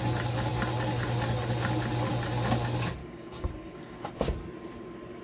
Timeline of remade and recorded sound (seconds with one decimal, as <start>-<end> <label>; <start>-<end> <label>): 0.0-3.0 recorded; 3.0-4.1 remade; 4.1-5.2 recorded